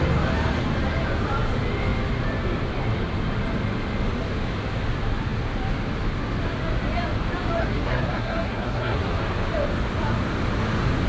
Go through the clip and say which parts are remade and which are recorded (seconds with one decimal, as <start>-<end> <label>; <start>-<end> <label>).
0.0-7.6 recorded; 7.6-9.0 remade; 9.0-11.1 recorded